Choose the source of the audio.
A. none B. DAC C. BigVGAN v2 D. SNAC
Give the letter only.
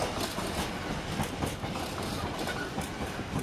A